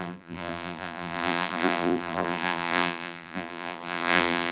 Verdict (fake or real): fake